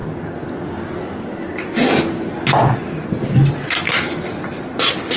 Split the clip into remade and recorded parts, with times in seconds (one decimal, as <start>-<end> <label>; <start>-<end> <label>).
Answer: 0.0-5.2 recorded

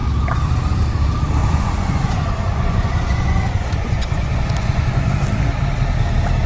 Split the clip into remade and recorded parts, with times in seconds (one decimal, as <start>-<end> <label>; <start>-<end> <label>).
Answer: 0.0-1.4 recorded; 1.4-5.1 remade; 5.1-6.5 recorded

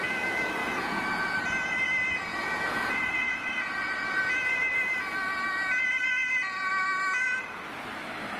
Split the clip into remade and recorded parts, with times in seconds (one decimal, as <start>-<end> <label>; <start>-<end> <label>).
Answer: 0.0-0.6 recorded; 0.6-1.4 remade; 1.4-2.3 recorded; 2.3-4.2 remade; 4.2-8.4 recorded

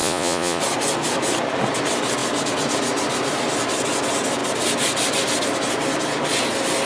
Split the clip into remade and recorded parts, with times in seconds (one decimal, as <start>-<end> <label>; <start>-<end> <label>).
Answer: 0.0-0.6 remade; 0.6-6.8 recorded

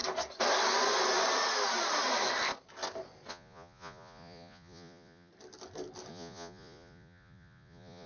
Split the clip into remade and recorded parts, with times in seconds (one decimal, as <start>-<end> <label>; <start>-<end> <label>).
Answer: 0.0-3.3 recorded; 3.3-5.3 remade; 5.3-6.1 recorded; 6.1-8.1 remade

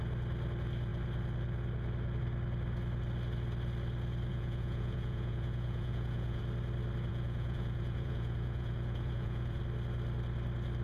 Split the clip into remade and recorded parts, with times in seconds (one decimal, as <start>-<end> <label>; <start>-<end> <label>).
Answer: 0.0-4.3 recorded; 4.3-6.4 remade; 6.4-7.1 recorded; 7.1-9.6 remade; 9.6-10.8 recorded

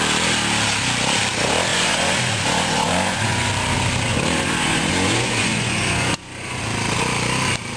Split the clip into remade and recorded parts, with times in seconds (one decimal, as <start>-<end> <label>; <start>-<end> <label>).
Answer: 0.0-1.7 recorded; 1.7-3.5 remade; 3.5-4.1 recorded; 4.1-6.6 remade; 6.6-7.8 recorded